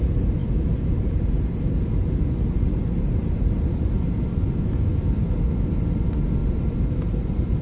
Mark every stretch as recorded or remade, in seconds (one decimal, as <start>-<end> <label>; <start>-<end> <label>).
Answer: 0.0-0.4 recorded; 0.4-4.4 remade; 4.4-6.4 recorded; 6.4-7.6 remade